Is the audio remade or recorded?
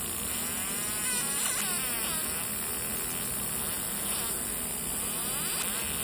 recorded